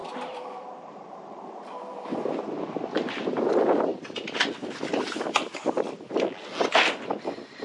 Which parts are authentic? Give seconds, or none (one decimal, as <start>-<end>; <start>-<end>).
2.4-7.6